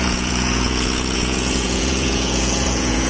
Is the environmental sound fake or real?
fake